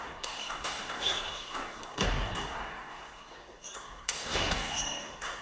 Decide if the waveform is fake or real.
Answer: fake